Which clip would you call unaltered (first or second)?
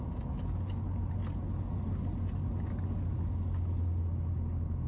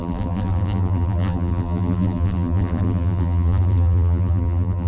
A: first